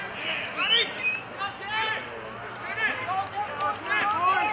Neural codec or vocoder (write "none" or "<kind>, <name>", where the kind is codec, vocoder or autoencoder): none